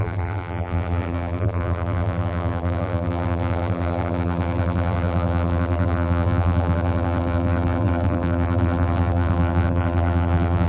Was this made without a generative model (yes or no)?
no